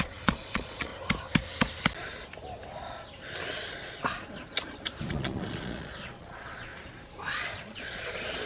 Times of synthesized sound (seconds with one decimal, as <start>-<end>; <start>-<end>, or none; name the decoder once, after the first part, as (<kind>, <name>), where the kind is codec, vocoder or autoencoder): 0.0-0.9 (vocoder, Vocos); 5.1-6.7; 7.5-8.5

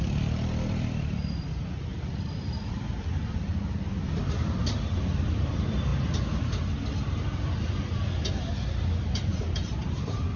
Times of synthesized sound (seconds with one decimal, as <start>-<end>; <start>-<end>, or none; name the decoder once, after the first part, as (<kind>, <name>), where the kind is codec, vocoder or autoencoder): 0.0-5.9 (vocoder, BigVGAN v2); 8.3-10.4

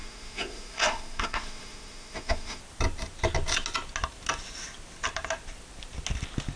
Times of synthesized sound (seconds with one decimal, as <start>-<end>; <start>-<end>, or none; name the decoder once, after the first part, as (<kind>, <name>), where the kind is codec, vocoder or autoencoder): 0.0-2.6 (autoencoder, DAC-VAE)

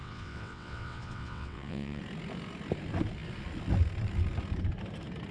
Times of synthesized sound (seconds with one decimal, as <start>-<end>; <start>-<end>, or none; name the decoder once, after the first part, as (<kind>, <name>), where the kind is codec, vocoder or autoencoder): 0.0-2.0 (vocoder, WaveNeXt)

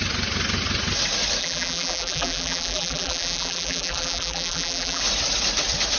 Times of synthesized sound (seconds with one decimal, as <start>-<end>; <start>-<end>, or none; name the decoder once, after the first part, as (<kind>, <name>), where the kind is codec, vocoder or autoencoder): 1.4-5.0 (vocoder, BigVGAN v2)

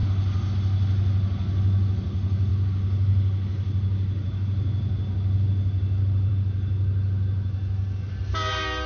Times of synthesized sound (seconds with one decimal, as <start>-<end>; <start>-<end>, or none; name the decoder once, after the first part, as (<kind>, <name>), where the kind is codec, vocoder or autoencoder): none

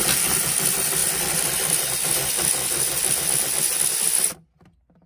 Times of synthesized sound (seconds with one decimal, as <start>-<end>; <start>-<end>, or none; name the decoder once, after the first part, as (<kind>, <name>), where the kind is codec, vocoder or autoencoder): none

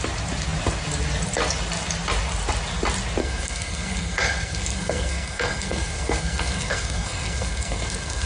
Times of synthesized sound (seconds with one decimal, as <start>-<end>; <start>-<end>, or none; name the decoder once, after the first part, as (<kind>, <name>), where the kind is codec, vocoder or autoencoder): 3.2-8.3 (codec, SNAC)